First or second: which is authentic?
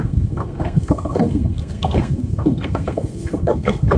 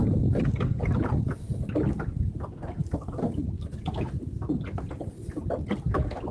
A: second